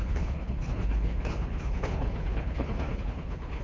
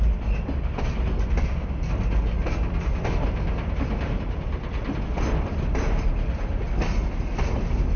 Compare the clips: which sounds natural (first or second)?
second